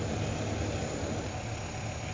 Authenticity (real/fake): real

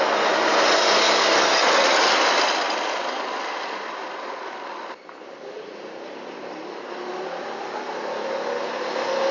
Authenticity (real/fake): real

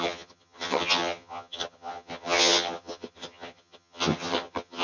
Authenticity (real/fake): fake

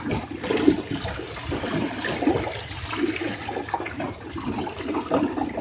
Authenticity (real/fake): real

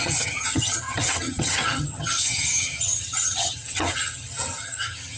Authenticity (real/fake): fake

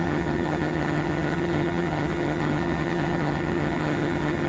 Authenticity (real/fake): fake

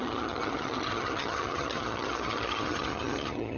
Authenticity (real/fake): fake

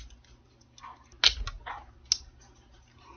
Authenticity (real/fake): real